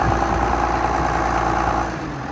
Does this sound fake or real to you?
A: real